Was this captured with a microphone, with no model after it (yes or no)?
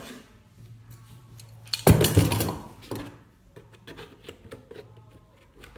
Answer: yes